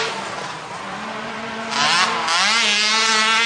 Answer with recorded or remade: recorded